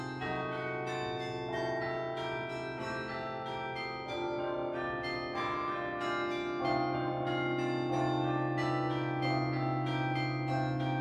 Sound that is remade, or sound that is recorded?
recorded